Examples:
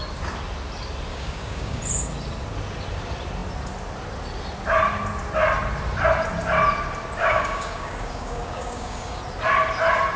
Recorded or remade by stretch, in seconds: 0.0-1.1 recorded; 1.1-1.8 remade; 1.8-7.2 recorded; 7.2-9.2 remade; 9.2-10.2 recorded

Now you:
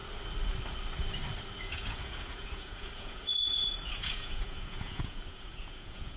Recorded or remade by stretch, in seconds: 0.0-1.6 recorded; 1.6-6.2 remade

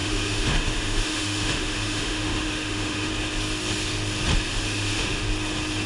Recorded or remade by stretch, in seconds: 0.0-3.1 remade; 3.1-4.5 recorded; 4.5-5.2 remade; 5.2-5.9 recorded

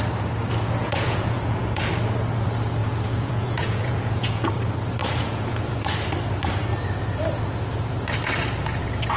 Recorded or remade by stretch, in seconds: 0.0-0.8 recorded; 0.8-1.9 remade; 1.9-2.8 recorded; 2.8-4.5 remade; 4.5-5.0 recorded; 5.0-5.8 remade; 5.8-9.2 recorded

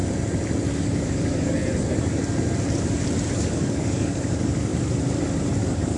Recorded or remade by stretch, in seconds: 0.0-0.7 recorded; 0.7-1.6 remade; 1.6-3.3 recorded; 3.3-4.7 remade; 4.7-5.5 recorded; 5.5-6.0 remade

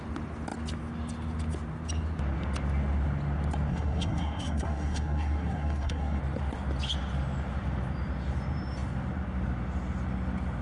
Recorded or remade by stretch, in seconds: 0.0-3.7 recorded; 3.7-6.2 remade; 6.2-10.6 recorded